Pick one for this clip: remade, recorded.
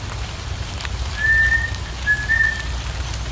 recorded